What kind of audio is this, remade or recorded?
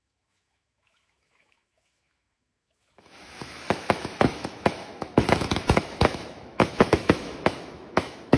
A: remade